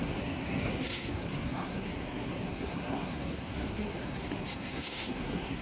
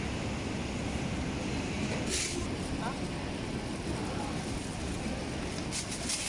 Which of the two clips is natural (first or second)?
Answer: second